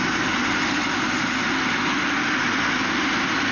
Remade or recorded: recorded